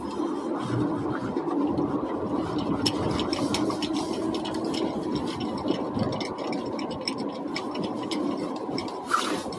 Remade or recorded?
recorded